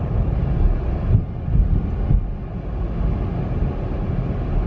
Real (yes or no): yes